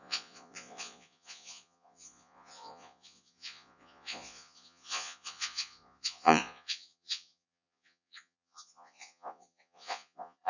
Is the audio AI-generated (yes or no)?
yes